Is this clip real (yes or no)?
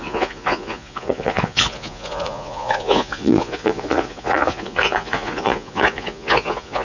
no